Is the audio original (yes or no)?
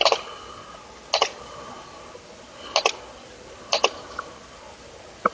yes